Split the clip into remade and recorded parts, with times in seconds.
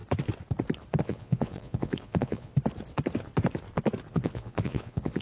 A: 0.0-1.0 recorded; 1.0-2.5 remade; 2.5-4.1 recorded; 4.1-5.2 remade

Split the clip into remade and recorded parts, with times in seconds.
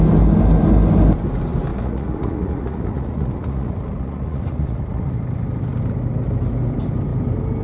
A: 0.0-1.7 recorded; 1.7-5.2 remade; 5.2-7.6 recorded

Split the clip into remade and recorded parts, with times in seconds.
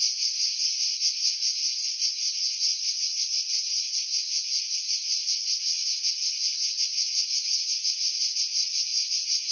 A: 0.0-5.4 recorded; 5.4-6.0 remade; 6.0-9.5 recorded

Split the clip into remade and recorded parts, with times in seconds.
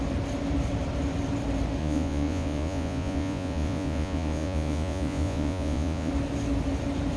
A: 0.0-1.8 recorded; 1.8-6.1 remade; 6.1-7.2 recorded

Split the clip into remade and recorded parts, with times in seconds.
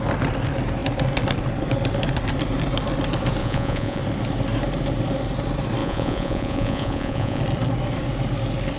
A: 0.0-3.4 recorded; 3.4-4.0 remade; 4.0-5.8 recorded; 5.8-7.4 remade; 7.4-8.8 recorded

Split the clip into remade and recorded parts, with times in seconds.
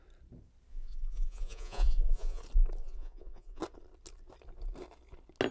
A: 0.0-0.7 recorded; 0.7-2.4 remade; 2.4-2.8 recorded; 2.8-3.6 remade; 3.6-5.5 recorded